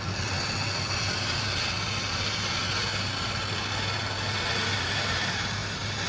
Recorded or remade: recorded